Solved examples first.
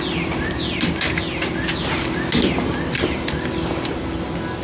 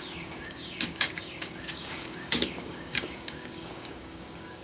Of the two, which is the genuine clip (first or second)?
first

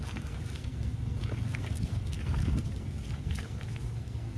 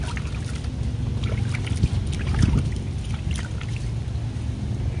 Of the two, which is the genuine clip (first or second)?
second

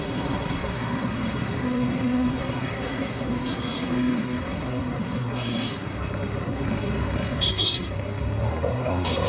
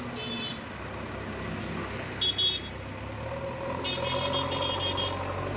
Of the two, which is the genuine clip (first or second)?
second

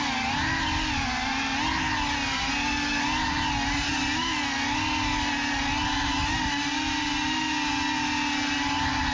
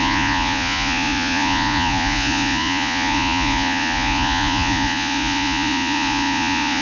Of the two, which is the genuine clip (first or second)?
first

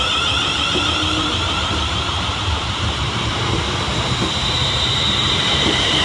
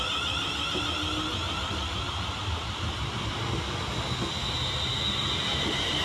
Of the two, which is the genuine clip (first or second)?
second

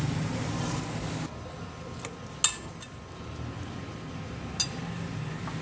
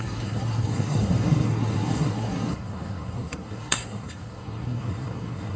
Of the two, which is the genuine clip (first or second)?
first